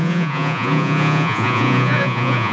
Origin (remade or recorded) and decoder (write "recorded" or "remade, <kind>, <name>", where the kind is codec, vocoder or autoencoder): remade, vocoder, Vocos